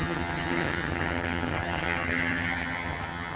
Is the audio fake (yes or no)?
yes